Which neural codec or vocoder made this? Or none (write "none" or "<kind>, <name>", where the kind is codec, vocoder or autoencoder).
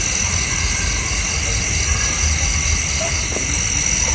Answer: none